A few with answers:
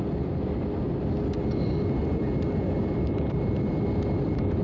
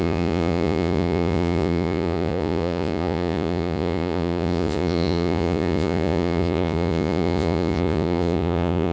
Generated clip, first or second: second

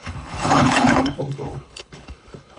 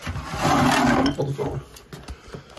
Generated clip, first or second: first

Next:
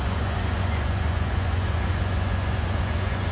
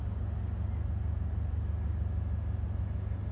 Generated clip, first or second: first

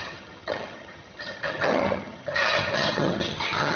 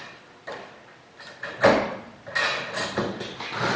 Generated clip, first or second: first